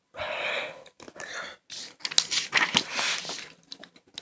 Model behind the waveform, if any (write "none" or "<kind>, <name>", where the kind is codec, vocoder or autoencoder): none